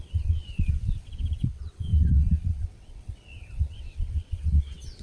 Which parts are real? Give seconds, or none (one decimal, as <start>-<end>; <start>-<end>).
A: none